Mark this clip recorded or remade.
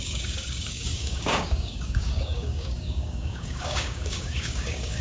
remade